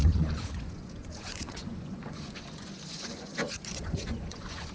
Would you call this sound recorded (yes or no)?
no